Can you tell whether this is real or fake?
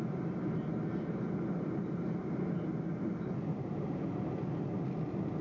real